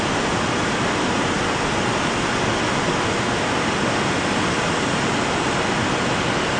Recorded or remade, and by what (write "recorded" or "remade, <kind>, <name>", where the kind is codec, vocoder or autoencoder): recorded